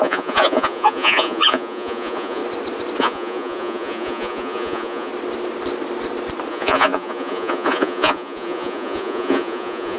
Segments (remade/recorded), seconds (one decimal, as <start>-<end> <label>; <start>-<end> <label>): 0.0-2.4 remade; 2.4-3.0 recorded; 3.0-5.1 remade; 5.1-6.5 recorded; 6.5-10.0 remade